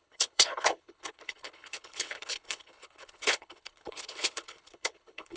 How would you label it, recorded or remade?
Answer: remade